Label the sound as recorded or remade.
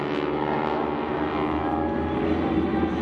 recorded